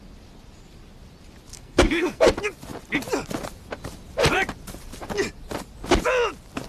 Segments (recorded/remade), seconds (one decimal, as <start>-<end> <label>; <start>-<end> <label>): 0.0-1.5 recorded; 1.5-2.3 remade; 2.3-6.7 recorded